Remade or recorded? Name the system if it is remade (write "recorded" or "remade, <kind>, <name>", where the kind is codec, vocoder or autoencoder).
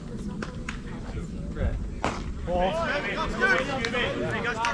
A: recorded